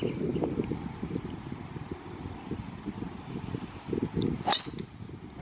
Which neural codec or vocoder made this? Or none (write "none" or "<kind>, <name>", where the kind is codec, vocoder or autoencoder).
none